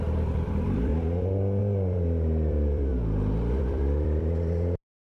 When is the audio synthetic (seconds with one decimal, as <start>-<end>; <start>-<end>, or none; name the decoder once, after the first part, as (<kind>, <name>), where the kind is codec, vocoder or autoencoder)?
0.0-0.9 (vocoder, BigVGAN v2); 1.6-2.9; 3.6-5.0